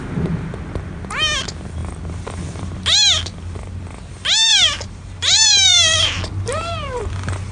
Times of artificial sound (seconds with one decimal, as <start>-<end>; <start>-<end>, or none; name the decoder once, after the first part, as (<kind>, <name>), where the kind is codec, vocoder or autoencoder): 4.5-7.0 (vocoder, BigVGAN v2)